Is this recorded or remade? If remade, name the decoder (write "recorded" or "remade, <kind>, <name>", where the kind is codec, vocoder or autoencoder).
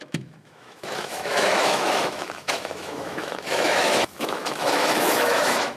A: remade, autoencoder, DAC-VAE